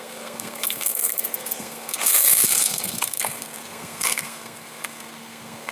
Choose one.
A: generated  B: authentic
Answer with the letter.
A